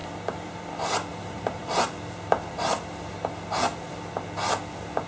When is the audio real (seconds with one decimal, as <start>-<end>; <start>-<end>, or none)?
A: 0.6-1.1; 1.7-5.1